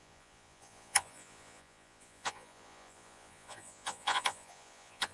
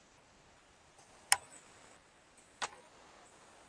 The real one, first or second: second